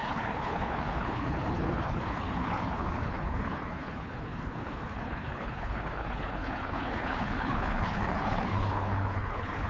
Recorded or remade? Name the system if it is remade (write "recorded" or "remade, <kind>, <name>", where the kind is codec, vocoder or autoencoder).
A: remade, codec, HILCodec